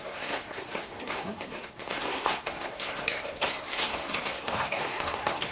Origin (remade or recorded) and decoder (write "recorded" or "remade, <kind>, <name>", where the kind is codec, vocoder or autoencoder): remade, codec, SNAC